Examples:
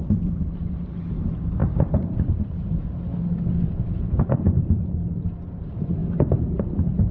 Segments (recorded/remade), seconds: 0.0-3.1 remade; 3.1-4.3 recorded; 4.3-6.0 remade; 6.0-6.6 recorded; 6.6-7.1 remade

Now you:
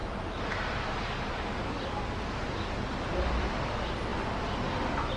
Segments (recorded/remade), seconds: 0.0-5.2 recorded

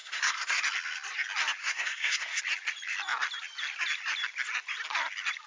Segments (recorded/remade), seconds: 0.0-0.6 remade; 0.6-1.6 recorded; 1.6-2.4 remade; 2.4-5.5 recorded

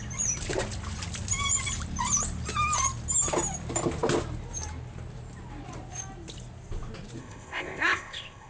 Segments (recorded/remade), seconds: 0.0-7.2 recorded; 7.2-8.5 remade

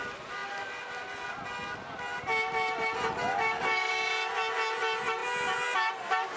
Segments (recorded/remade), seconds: 0.0-3.3 recorded; 3.3-3.9 remade; 3.9-6.4 recorded

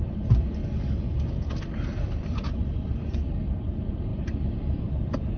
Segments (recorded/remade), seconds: 0.0-5.4 recorded

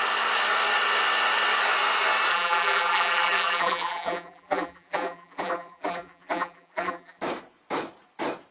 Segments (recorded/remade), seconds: 0.0-2.3 recorded; 2.3-7.2 remade; 7.2-8.5 recorded